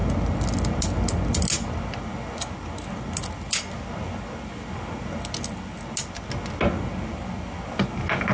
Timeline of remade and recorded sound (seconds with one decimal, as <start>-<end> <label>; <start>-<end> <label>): 0.0-8.3 recorded

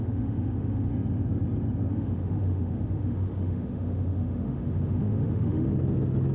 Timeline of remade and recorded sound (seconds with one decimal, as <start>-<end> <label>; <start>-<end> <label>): 0.0-0.9 remade; 0.9-1.9 recorded; 1.9-5.7 remade; 5.7-6.3 recorded

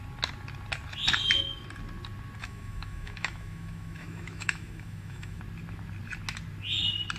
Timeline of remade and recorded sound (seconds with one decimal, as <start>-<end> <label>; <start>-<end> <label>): 0.0-2.4 recorded; 2.4-5.4 remade; 5.4-7.2 recorded

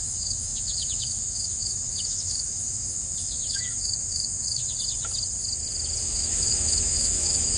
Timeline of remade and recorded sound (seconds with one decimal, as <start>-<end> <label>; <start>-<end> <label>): 0.0-4.6 remade; 4.6-6.0 recorded; 6.0-7.6 remade

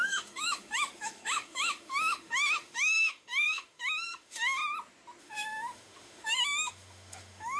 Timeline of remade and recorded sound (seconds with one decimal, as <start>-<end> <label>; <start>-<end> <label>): 0.0-4.6 remade; 4.6-5.2 recorded; 5.2-7.6 remade

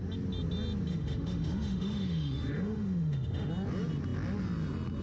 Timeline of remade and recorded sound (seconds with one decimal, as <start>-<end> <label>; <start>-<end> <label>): 0.0-0.9 recorded; 0.9-3.5 remade; 3.5-5.0 recorded